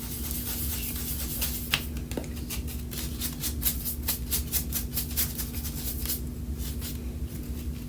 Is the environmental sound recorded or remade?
recorded